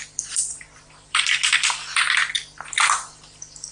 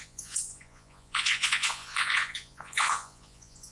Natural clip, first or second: first